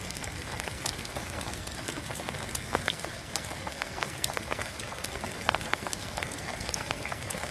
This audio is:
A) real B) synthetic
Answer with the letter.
B